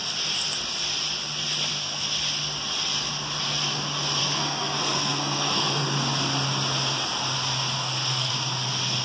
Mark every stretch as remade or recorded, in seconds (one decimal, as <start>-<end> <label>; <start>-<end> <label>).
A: 0.0-4.2 recorded; 4.2-5.8 remade; 5.8-7.8 recorded; 7.8-8.3 remade; 8.3-9.0 recorded